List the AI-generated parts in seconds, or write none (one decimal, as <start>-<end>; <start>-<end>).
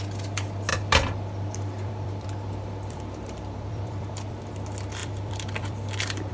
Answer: 0.7-4.5; 5.0-6.3